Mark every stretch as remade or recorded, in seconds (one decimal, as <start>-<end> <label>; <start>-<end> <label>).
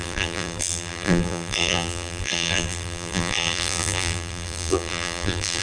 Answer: 0.0-5.6 remade